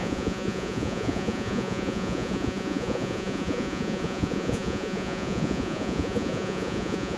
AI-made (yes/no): yes